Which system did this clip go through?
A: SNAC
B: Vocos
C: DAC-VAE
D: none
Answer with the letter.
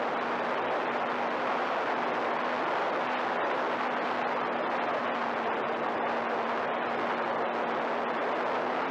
D